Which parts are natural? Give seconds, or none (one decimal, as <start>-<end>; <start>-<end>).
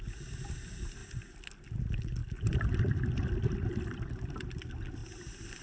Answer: 0.0-1.0; 1.8-2.2; 4.4-5.6